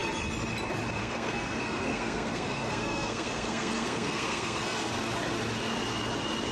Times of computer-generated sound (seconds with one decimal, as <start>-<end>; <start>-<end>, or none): 1.0-4.9